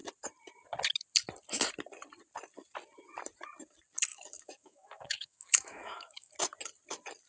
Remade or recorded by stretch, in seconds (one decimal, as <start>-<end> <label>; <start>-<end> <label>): 0.0-4.1 recorded; 4.1-6.3 remade; 6.3-7.3 recorded